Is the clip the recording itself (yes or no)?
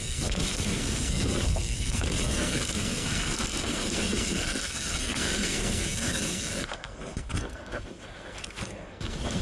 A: no